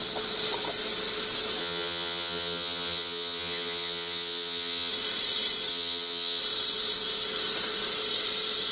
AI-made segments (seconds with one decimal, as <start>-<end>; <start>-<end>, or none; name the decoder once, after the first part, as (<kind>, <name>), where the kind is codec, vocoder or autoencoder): 1.6-4.9 (vocoder, HiFi-GAN); 5.7-6.4